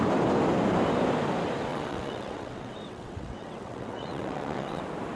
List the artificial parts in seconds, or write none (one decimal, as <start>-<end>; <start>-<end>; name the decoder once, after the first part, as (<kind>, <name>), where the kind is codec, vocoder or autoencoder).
1.7-4.8 (vocoder, WaveNeXt)

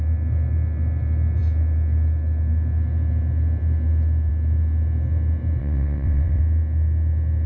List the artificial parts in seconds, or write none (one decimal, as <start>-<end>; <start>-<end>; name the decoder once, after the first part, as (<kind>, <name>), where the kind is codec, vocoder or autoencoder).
5.6-6.4 (vocoder, WaveNeXt)

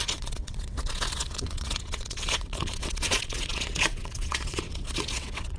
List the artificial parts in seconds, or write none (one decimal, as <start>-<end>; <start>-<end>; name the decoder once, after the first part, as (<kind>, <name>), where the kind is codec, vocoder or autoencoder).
0.0-5.6 (vocoder, WaveNeXt)

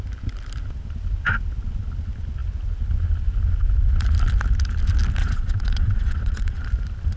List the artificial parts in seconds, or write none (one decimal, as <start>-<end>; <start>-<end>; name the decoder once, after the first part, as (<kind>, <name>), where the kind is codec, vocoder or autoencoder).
5.2-6.6 (vocoder, WaveNeXt)

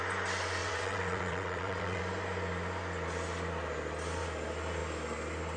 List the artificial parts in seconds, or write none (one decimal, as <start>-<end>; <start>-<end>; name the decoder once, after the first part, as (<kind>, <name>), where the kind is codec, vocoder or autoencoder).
0.6-2.0 (vocoder, WaveNeXt)

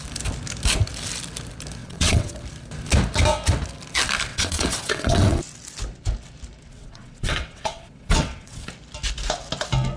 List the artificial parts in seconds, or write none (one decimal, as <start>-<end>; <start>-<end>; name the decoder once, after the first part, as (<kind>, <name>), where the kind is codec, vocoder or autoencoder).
1.8-2.3 (vocoder, WaveNeXt); 4.3-5.4; 6.7-8.7